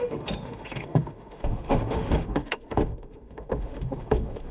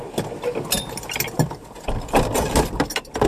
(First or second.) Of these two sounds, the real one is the second